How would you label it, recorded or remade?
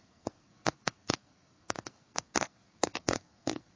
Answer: remade